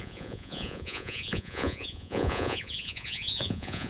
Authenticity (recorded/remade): remade